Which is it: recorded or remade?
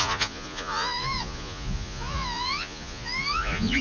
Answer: remade